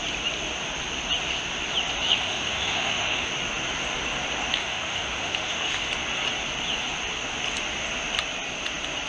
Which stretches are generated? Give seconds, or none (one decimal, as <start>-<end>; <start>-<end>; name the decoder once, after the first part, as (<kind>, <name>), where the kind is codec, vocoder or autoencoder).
2.0-3.3 (autoencoder, DAC-VAE); 4.6-5.9